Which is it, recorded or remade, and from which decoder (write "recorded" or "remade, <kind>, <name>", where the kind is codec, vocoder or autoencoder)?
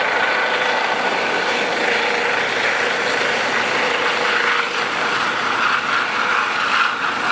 recorded